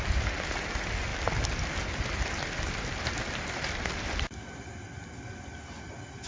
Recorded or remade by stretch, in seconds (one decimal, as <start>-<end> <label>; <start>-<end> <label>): 0.0-6.3 recorded